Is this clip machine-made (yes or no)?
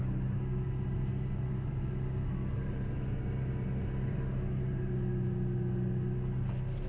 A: no